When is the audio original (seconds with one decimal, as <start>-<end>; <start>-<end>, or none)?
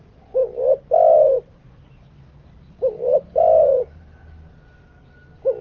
0.0-5.6